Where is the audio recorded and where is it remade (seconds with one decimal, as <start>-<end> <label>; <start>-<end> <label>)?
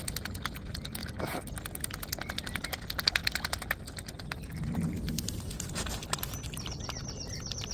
0.0-7.7 recorded